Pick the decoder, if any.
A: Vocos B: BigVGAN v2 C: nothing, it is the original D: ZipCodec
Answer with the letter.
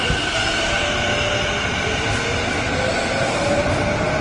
C